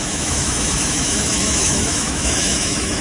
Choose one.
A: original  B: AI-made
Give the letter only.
B